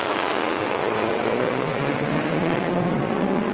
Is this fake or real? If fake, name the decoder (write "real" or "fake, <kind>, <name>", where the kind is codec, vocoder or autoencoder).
fake, vocoder, Vocos